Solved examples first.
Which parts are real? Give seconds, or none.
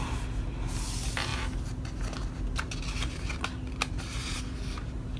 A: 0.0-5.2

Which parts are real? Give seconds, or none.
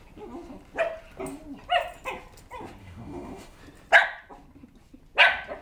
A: 0.0-2.8; 3.6-5.6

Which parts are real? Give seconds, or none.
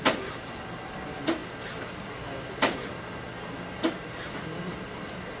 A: 0.0-5.4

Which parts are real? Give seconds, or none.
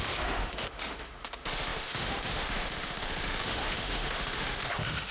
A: none